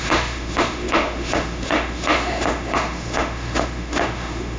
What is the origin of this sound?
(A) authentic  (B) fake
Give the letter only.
B